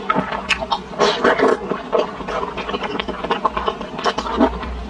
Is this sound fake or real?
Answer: real